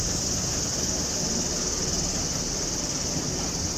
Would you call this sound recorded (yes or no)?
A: yes